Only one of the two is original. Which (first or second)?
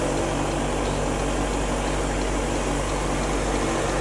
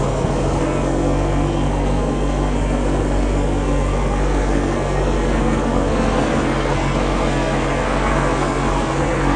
first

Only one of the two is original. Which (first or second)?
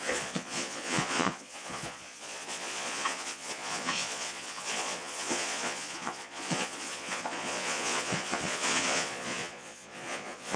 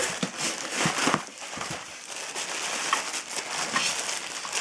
second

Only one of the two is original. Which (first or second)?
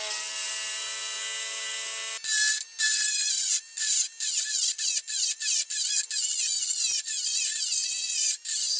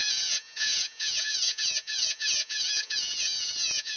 first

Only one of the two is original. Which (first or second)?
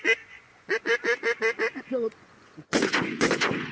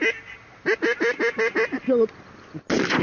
second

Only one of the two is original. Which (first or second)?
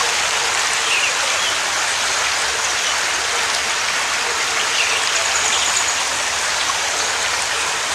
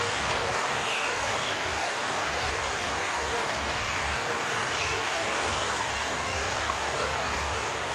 first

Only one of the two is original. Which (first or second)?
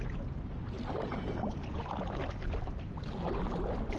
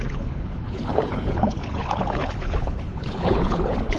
first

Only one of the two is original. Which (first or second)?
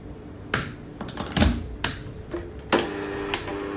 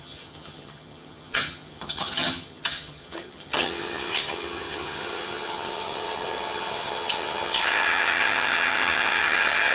first